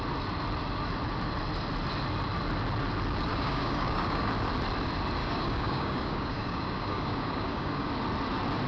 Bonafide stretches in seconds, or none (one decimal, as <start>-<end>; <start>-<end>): 0.0-3.3; 4.3-5.2; 7.9-8.7